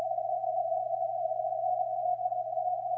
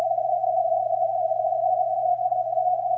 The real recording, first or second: first